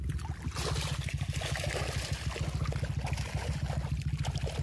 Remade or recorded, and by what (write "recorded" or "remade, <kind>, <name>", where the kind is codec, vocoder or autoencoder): recorded